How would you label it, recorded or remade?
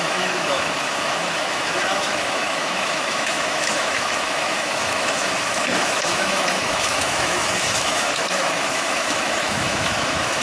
remade